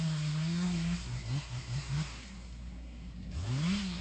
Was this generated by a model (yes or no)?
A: yes